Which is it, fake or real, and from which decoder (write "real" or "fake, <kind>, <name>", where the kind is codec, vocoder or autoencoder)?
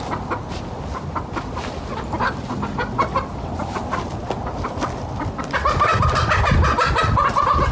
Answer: real